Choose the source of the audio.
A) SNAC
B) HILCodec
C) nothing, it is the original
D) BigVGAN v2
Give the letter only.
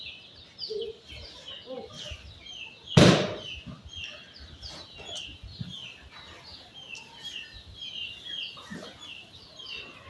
C